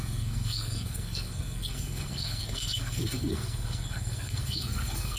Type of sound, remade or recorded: remade